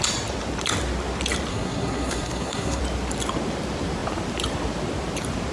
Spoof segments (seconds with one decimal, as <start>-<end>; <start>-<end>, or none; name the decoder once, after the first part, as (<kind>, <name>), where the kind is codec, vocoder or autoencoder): 1.5-2.8 (codec, SNAC)